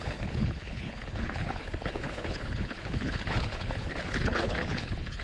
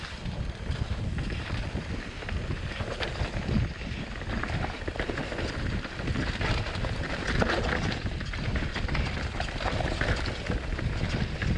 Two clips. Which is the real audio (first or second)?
second